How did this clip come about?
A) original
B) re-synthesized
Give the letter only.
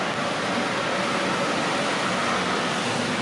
A